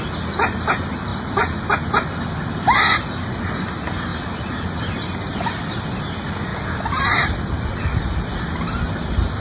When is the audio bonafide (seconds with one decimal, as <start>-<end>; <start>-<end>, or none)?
0.0-4.1; 4.8-6.5; 7.9-9.4